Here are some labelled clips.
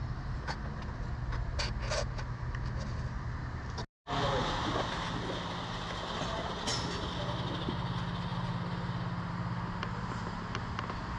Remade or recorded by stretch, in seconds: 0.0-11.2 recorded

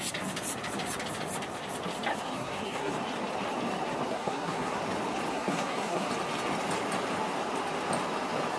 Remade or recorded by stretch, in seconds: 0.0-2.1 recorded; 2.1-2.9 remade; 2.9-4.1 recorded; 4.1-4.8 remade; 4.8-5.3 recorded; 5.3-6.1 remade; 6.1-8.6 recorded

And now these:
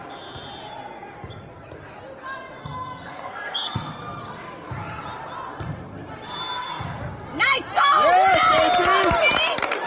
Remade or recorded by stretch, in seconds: 0.0-2.6 recorded; 2.6-4.0 remade; 4.0-9.9 recorded